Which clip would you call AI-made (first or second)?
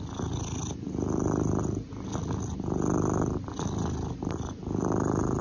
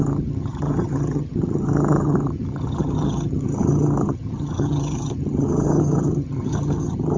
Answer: second